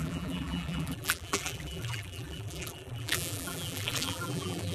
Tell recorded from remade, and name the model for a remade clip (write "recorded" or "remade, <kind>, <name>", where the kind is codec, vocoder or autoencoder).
remade, vocoder, BigVGAN v2